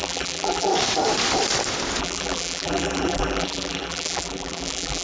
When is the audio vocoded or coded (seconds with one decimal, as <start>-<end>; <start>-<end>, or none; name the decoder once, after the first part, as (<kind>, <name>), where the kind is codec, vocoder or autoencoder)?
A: 0.0-0.7 (vocoder, BigVGAN v2); 2.0-5.0